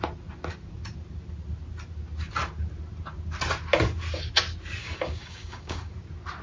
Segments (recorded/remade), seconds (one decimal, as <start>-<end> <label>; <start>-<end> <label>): 0.0-4.8 recorded; 4.8-5.9 remade; 5.9-6.4 recorded